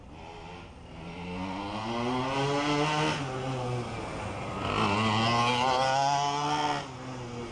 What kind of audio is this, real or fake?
real